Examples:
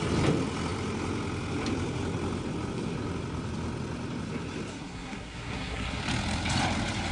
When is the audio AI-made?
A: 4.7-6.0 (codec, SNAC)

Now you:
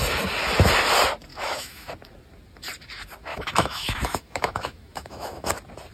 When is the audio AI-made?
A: 1.3-1.9 (autoencoder, DAC-VAE); 3.3-5.5